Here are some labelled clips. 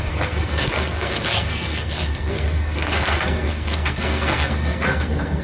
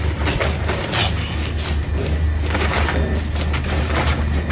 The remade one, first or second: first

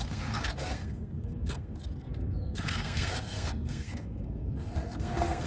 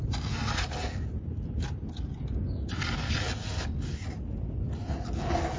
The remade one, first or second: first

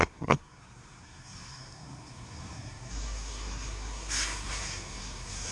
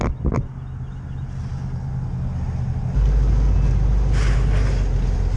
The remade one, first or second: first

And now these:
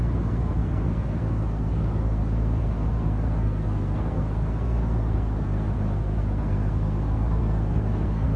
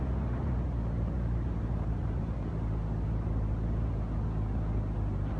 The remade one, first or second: first